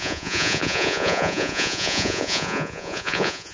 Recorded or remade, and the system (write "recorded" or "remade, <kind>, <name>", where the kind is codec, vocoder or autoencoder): remade, vocoder, Vocos